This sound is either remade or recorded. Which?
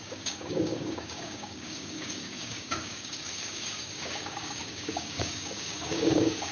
remade